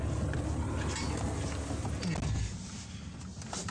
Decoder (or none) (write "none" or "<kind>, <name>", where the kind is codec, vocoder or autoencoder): none